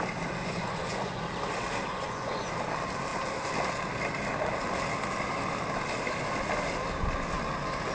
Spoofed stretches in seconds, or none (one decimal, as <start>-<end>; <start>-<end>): 0.4-1.2; 1.9-2.5